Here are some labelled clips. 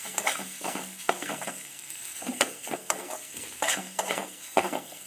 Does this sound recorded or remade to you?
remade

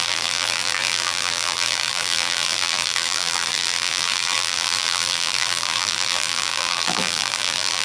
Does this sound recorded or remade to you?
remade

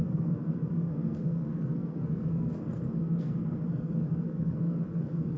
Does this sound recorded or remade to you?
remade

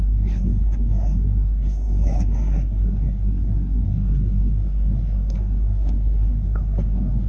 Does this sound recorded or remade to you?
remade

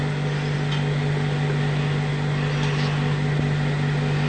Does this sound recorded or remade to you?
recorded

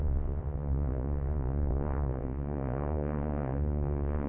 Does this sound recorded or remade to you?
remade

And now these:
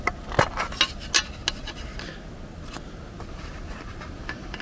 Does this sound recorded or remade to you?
recorded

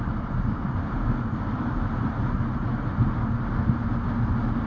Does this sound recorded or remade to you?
recorded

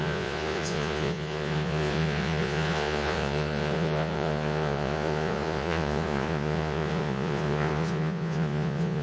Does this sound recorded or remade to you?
remade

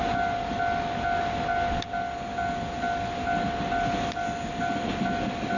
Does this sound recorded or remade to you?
recorded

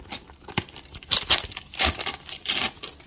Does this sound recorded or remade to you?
recorded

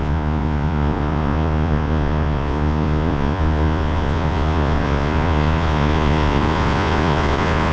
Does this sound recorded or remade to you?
remade